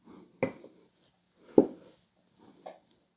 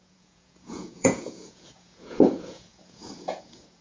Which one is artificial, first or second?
second